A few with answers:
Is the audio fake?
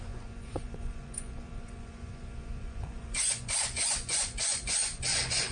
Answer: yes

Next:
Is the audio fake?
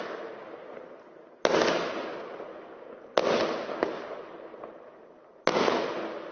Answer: no